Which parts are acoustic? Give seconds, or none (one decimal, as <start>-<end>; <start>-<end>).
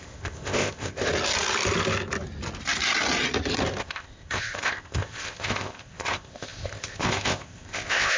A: 1.1-3.8